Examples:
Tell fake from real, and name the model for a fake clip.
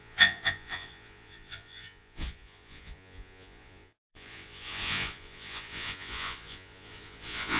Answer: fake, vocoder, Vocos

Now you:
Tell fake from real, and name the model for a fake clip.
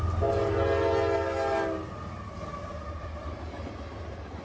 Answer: real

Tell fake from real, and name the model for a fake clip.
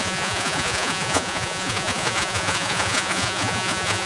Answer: fake, vocoder, Vocos